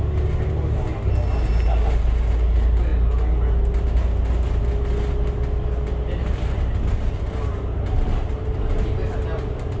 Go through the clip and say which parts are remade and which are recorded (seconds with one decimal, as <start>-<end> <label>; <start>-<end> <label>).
0.0-9.8 recorded